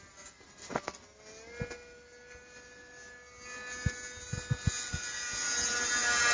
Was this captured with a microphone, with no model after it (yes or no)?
yes